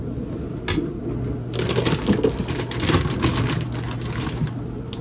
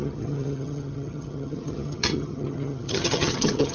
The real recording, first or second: first